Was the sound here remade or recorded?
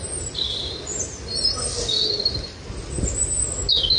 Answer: recorded